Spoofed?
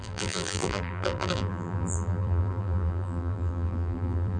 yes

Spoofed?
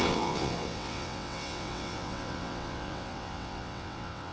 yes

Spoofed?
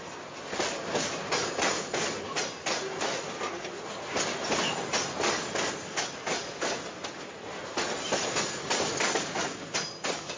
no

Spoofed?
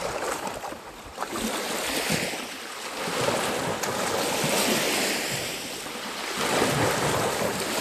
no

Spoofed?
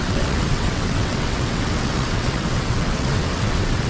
yes